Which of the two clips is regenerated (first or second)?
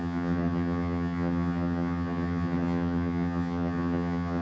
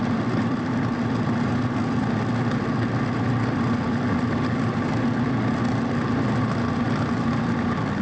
first